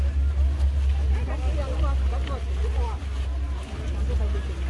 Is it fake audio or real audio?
real